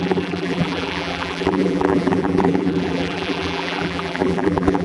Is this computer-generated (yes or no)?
yes